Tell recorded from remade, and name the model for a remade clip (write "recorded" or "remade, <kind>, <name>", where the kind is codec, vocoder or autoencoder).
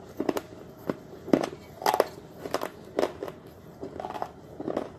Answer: recorded